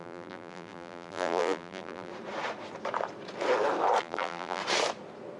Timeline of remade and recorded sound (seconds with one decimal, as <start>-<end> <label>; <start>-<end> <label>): 0.0-2.1 remade; 2.1-4.0 recorded; 4.0-4.6 remade; 4.6-5.4 recorded